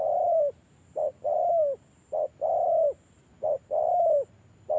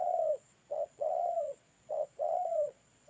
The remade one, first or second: second